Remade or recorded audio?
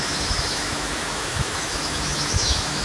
remade